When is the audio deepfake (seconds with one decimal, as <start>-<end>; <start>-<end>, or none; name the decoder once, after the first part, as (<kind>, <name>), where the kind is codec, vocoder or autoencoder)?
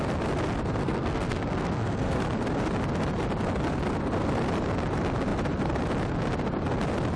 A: 0.8-2.2 (codec, SNAC)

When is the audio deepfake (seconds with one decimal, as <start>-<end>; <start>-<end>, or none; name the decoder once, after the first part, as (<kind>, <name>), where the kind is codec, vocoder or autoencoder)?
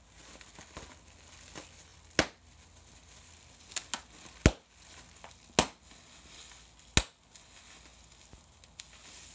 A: none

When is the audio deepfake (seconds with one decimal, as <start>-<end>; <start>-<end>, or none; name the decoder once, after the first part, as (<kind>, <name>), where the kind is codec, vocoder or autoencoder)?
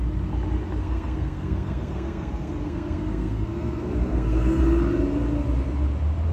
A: 0.8-4.6 (codec, SNAC)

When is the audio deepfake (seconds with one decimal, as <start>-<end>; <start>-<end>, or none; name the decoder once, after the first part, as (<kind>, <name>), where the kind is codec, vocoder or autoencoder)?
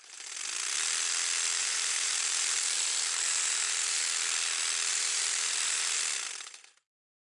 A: 1.6-4.0 (vocoder, BigVGAN v2); 4.9-6.0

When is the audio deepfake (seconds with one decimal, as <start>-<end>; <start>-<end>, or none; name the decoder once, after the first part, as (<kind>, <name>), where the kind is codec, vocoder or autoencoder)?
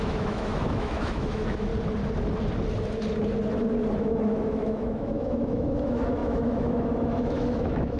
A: 0.0-1.7 (autoencoder, DAC-VAE); 4.0-8.0